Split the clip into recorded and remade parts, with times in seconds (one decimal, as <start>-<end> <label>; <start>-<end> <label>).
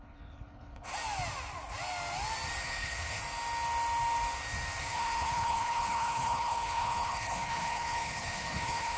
0.0-0.9 remade; 0.9-2.6 recorded; 2.6-3.2 remade; 3.2-4.8 recorded; 4.8-9.0 remade